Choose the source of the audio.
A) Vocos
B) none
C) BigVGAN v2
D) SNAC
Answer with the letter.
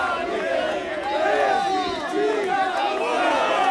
A